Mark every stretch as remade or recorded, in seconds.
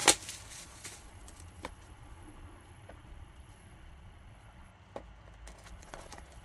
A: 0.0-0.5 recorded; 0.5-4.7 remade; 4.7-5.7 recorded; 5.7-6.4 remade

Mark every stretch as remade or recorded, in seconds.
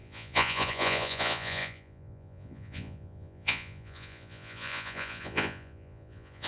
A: 0.0-6.5 remade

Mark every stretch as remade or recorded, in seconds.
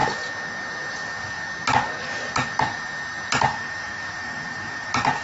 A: 0.0-3.5 recorded; 3.5-5.2 remade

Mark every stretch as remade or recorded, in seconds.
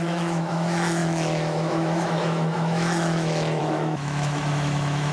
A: 0.0-5.1 remade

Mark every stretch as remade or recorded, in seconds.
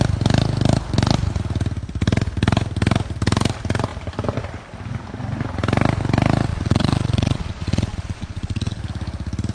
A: 0.0-6.5 recorded; 6.5-8.8 remade; 8.8-9.5 recorded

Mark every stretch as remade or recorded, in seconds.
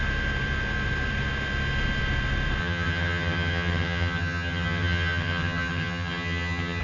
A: 0.0-2.6 recorded; 2.6-6.8 remade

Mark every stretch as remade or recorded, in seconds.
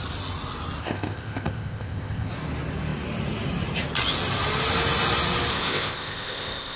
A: 0.0-0.8 recorded; 0.8-2.3 remade; 2.3-5.5 recorded; 5.5-6.8 remade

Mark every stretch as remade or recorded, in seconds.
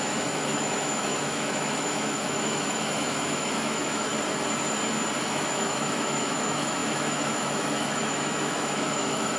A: 0.0-4.1 remade; 4.1-5.2 recorded; 5.2-9.4 remade